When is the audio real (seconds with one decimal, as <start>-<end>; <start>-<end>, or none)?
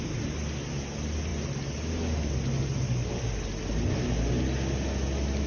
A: 0.0-5.5